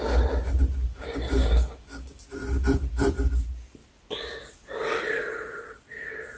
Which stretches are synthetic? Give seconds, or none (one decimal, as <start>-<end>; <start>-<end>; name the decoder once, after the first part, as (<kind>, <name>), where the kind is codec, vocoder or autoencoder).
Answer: 0.9-2.2 (codec, DAC)